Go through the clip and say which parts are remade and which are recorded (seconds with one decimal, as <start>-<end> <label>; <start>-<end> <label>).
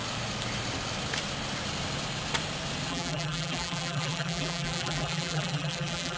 0.0-2.9 recorded; 2.9-6.2 remade